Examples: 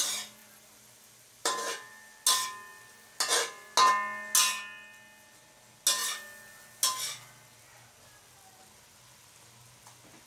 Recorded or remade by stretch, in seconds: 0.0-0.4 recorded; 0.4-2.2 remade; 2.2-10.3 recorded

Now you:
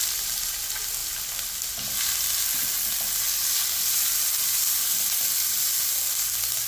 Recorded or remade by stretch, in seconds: 0.0-6.7 recorded

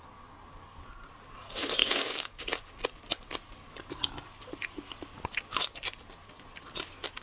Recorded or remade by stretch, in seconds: 0.0-1.8 recorded; 1.8-2.4 remade; 2.4-7.2 recorded

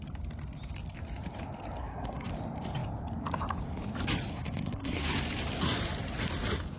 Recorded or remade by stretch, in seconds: 0.0-1.8 recorded; 1.8-2.3 remade; 2.3-4.3 recorded; 4.3-5.1 remade; 5.1-6.8 recorded

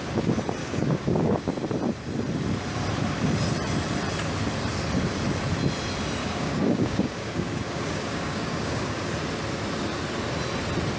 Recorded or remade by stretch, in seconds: 0.0-0.6 recorded; 0.6-1.5 remade; 1.5-6.2 recorded; 6.2-9.1 remade; 9.1-11.0 recorded